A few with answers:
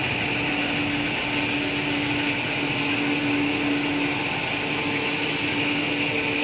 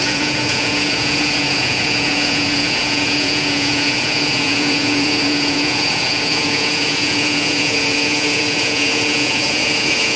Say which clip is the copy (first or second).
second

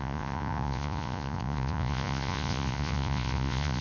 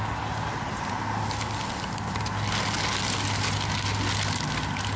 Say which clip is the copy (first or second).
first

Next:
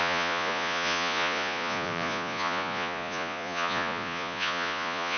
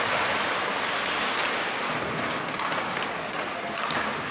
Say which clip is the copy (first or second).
first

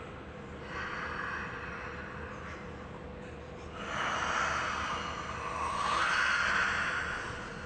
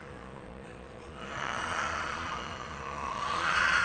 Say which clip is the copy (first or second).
second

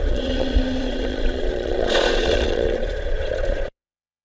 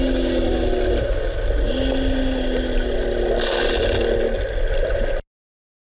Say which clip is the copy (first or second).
first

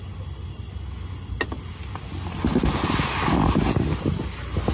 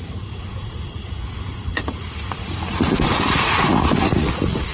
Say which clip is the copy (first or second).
second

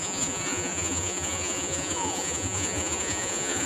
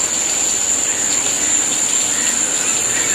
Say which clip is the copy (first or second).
first